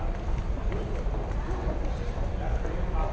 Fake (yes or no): no